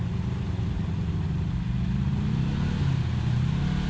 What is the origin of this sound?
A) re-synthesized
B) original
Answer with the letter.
B